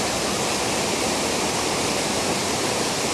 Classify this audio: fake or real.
real